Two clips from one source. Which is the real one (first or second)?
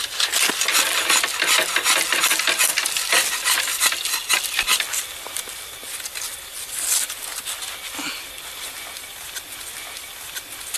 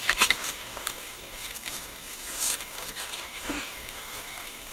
first